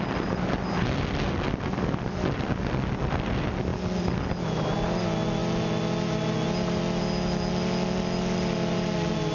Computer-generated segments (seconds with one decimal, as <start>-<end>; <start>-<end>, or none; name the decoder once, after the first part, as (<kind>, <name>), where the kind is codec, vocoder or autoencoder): none